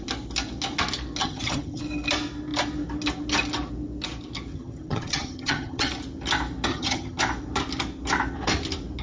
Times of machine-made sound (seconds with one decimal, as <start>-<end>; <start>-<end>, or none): 1.2-1.8; 4.5-5.9; 6.7-7.2